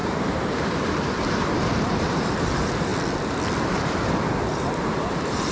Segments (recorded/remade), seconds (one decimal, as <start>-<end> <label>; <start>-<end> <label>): 0.0-2.9 remade; 2.9-3.6 recorded; 3.6-5.5 remade

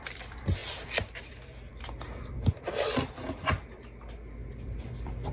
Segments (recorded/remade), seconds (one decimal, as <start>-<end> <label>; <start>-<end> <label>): 0.0-5.3 remade